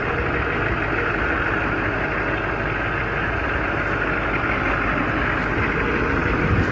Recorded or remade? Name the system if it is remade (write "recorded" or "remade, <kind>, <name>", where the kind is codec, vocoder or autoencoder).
recorded